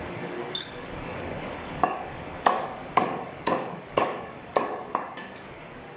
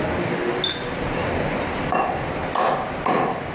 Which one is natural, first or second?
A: second